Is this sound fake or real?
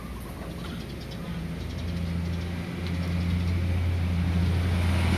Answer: real